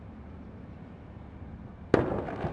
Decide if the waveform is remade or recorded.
recorded